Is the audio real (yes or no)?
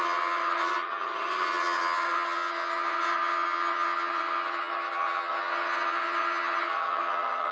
no